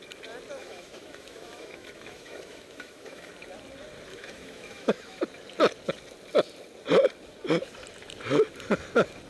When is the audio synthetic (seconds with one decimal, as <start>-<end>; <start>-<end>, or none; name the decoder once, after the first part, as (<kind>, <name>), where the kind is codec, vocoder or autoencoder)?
0.6-3.3 (autoencoder, DAC-VAE); 4.1-5.2